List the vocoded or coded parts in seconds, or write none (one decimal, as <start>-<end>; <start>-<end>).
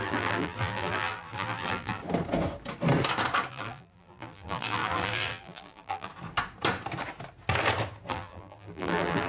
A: 0.0-2.0; 3.5-6.1; 8.1-9.3